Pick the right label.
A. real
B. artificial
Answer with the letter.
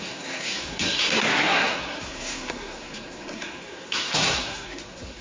B